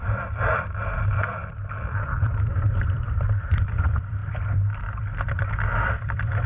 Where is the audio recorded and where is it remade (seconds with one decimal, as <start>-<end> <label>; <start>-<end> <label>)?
0.0-6.5 remade